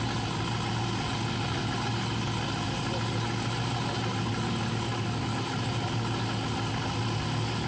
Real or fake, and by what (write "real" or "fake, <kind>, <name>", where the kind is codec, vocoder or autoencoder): real